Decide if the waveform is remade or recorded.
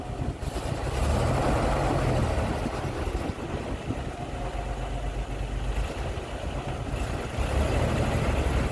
recorded